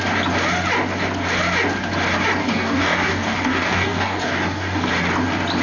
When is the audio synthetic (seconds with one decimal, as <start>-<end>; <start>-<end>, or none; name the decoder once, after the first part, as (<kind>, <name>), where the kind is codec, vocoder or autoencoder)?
2.4-4.9 (codec, DAC)

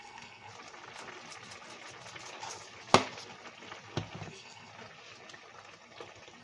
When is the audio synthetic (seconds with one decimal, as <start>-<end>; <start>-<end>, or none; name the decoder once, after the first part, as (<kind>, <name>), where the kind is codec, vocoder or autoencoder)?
0.0-0.5 (codec, SNAC); 4.3-4.7

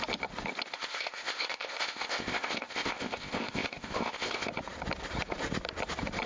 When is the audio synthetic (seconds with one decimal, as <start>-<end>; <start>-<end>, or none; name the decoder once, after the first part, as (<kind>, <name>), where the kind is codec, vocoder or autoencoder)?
0.7-4.5 (codec, ZipCodec)

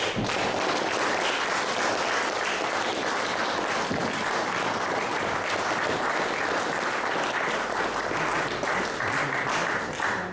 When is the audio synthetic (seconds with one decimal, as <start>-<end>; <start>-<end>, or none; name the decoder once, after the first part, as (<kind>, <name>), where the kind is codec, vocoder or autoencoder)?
8.3-9.2 (vocoder, BigVGAN v2)

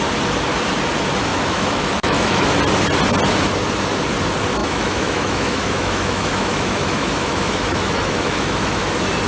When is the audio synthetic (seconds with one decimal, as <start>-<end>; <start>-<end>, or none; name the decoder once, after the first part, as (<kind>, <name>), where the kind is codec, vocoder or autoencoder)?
1.3-2.5 (autoencoder, DAC-VAE); 4.6-8.8